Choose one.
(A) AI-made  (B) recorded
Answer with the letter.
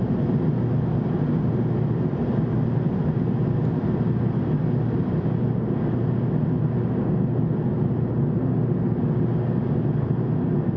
B